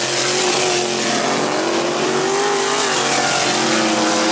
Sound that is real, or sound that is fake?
real